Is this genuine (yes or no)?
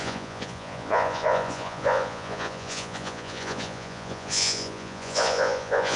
no